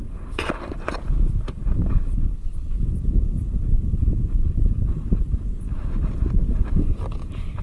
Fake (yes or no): yes